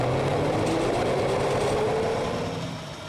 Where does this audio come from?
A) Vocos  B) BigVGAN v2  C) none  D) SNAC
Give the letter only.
C